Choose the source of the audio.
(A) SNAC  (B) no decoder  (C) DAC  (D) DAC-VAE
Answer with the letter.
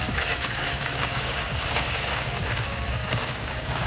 C